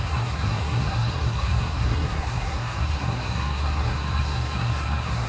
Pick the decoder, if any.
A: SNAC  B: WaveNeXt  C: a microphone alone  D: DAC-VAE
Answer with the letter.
A